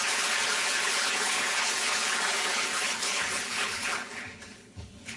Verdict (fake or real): fake